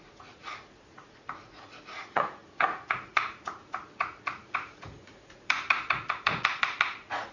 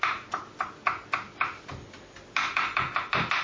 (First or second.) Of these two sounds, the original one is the second